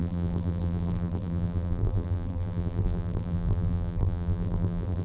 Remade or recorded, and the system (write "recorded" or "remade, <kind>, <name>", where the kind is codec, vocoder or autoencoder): remade, vocoder, BigVGAN v2